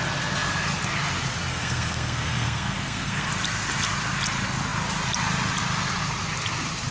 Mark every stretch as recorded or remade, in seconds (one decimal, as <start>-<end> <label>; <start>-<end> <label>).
0.0-1.5 recorded; 1.5-3.3 remade; 3.3-6.9 recorded